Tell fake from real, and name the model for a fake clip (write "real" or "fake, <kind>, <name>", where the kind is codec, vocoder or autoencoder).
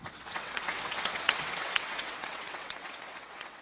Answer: fake, vocoder, WaveNeXt